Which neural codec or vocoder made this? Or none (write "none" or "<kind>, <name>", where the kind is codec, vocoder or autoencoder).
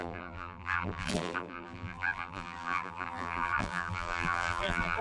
vocoder, BigVGAN v2